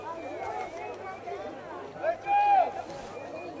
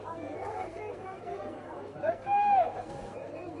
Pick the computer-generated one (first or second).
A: second